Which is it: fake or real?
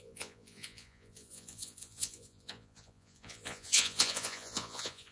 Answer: fake